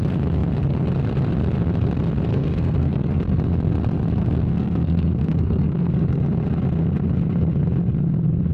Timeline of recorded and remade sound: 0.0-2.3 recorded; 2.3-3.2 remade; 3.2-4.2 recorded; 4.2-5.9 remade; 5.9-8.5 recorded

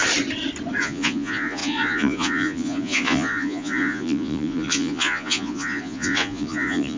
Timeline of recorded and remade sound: 0.0-0.8 recorded; 0.8-7.0 remade

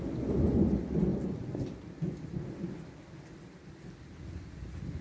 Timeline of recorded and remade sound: 0.0-5.0 recorded

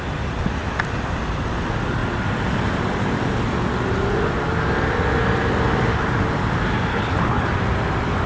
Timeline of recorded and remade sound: 0.0-6.9 recorded; 6.9-7.5 remade; 7.5-8.3 recorded

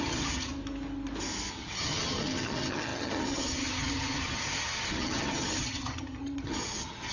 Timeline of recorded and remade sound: 0.0-0.5 remade; 0.5-1.5 recorded; 1.5-7.1 remade

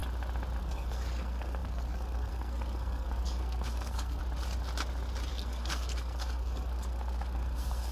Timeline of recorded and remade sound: 0.0-0.6 recorded; 0.6-4.2 remade; 4.2-5.3 recorded; 5.3-7.9 remade

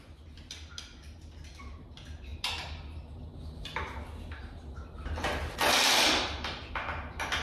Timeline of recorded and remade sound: 0.0-7.4 recorded